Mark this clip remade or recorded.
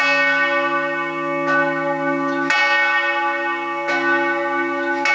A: recorded